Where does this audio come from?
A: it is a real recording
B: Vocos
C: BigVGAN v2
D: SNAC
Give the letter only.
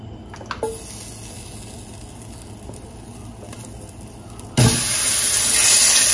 A